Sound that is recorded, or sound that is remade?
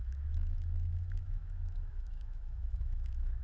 remade